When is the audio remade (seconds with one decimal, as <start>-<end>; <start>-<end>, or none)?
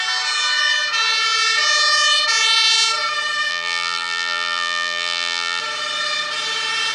3.5-5.6